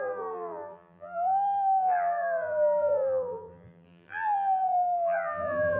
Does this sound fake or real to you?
fake